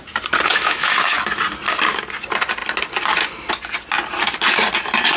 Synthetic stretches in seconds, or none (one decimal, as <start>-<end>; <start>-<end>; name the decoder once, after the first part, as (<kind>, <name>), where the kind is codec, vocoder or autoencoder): 0.5-1.1 (autoencoder, DAC-VAE)